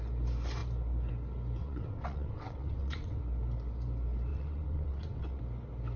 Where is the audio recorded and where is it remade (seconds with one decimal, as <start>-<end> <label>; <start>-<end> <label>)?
0.0-1.6 recorded; 1.6-3.2 remade; 3.2-4.3 recorded; 4.3-5.4 remade; 5.4-6.0 recorded